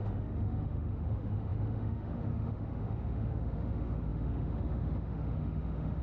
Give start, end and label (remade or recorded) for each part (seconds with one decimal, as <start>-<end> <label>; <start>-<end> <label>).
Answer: 0.0-6.0 remade